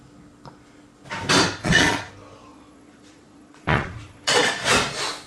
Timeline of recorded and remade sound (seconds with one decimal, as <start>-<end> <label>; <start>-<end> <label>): 0.0-1.6 recorded; 1.6-2.1 remade; 2.1-2.5 recorded; 2.5-4.7 remade; 4.7-5.3 recorded